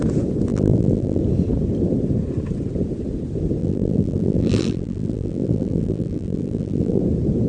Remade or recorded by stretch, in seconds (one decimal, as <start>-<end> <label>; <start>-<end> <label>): 0.0-0.5 recorded; 0.5-1.2 remade; 1.2-3.6 recorded; 3.6-7.0 remade; 7.0-7.5 recorded